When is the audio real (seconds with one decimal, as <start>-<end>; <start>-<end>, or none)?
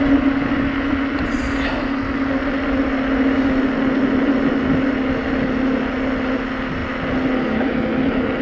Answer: 0.0-8.4